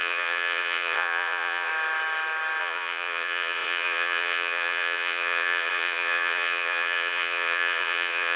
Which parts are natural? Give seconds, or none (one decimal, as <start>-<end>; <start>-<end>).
1.7-2.6